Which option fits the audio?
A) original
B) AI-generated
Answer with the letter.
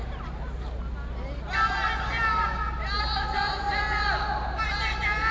A